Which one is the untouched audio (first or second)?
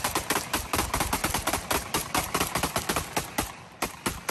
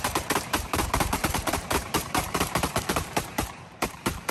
first